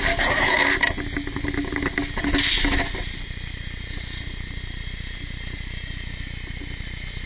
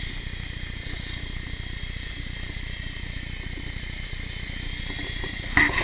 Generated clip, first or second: second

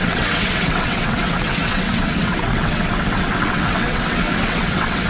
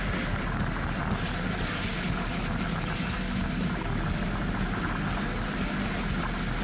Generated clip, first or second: first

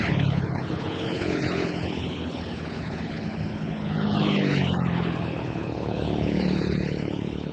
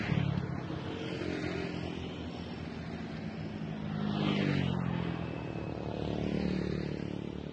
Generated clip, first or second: first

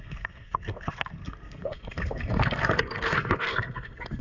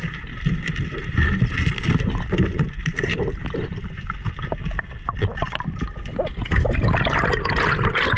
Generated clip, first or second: first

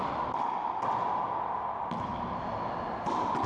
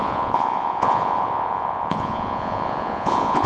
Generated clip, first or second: second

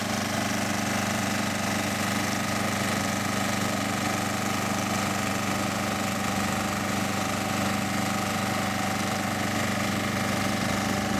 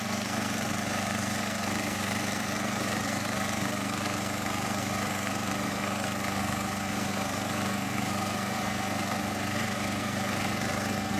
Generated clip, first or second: second